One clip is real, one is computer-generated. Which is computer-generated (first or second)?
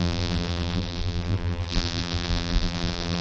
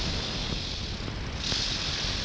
first